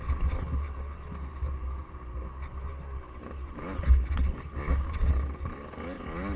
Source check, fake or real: real